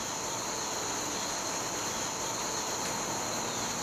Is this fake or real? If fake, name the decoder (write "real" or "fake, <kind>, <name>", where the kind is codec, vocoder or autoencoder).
real